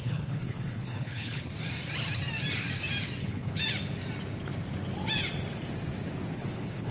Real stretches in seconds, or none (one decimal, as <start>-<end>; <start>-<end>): 1.5-3.2; 3.6-6.3